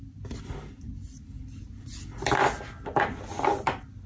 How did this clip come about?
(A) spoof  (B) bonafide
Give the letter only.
B